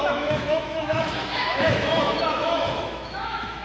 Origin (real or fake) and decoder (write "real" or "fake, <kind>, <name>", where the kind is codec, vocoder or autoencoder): fake, autoencoder, DAC-VAE